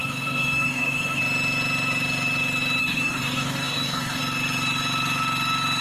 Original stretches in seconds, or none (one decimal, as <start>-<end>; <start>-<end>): 1.2-2.8; 4.2-5.8